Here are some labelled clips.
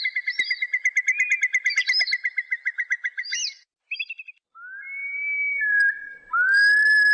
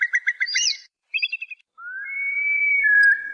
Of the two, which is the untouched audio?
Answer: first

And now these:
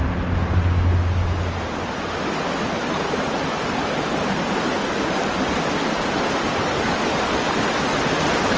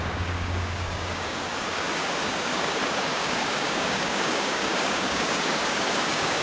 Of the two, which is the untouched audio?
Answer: first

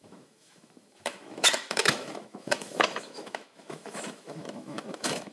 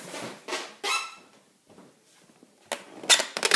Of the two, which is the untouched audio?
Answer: second